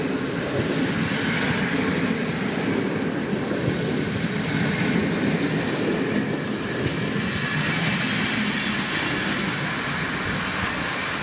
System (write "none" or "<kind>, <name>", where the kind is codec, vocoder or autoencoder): none